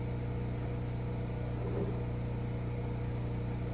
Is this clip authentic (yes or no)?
yes